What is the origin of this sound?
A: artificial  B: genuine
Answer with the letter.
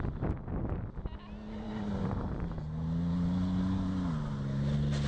B